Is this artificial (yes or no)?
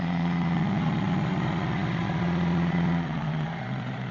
yes